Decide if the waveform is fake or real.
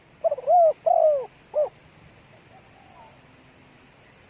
real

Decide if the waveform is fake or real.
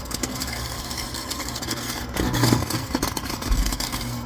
fake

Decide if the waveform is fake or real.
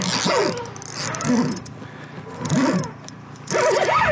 real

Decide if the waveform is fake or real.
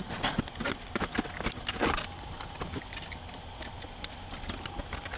real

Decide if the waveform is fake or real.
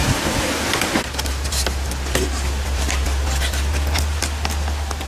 real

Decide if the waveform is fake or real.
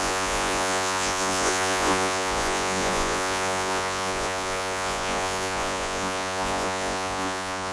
fake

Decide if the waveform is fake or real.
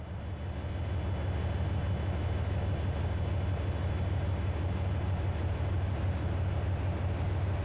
real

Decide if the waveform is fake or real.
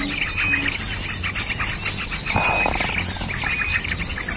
real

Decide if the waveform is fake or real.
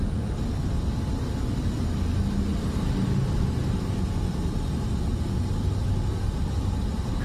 real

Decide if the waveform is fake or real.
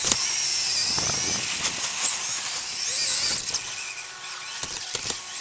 real